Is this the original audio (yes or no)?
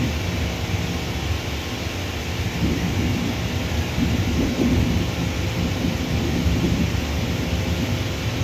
yes